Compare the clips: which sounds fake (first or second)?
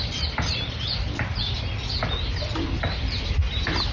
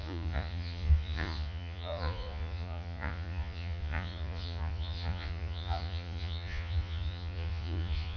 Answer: second